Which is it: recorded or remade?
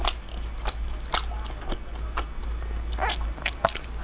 recorded